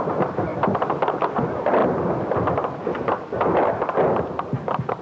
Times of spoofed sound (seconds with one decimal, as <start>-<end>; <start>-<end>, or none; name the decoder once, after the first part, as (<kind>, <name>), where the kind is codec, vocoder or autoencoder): none